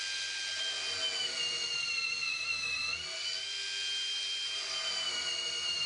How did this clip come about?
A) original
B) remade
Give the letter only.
A